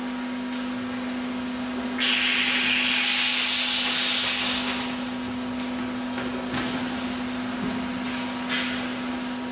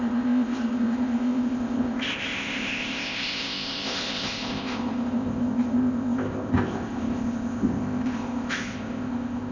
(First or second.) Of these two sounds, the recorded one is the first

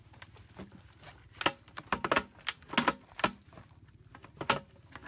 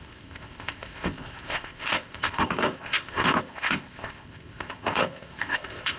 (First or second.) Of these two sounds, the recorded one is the first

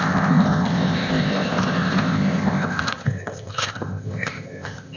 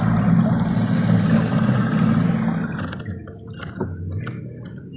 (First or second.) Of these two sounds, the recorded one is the second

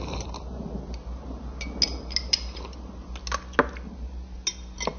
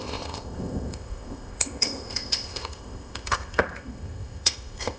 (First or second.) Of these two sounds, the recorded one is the first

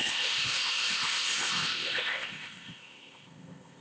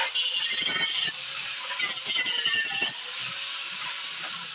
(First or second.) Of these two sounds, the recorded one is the second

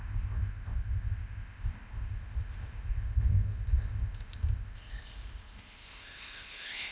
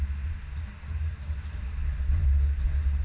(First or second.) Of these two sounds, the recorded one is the second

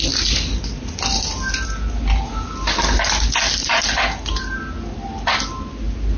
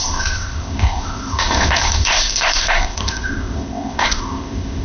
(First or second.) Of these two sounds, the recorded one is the first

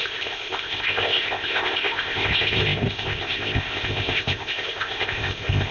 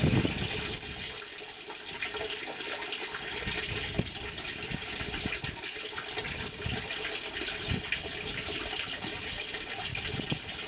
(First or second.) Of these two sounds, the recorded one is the second